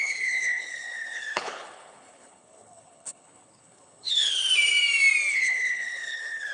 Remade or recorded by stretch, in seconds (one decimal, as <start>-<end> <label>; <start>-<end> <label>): 0.0-4.4 remade; 4.4-5.3 recorded; 5.3-6.5 remade